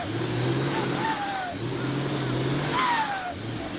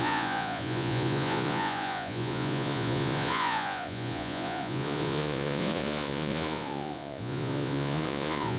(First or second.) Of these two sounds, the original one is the first